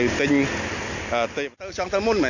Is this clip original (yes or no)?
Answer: yes